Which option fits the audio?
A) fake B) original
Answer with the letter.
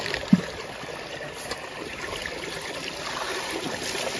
B